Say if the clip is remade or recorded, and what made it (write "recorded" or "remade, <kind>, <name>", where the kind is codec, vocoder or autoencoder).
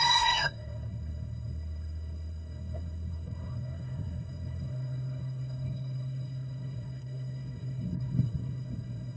remade, codec, SNAC